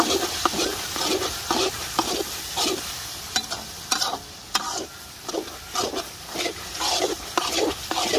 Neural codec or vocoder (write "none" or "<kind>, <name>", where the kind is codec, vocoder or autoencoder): vocoder, BigVGAN v2